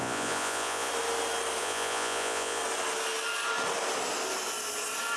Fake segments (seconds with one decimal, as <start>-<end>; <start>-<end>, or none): 0.0-0.9; 1.6-2.6